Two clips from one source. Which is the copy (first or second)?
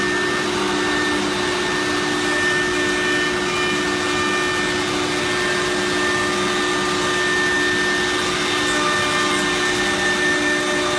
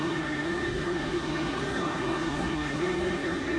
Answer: second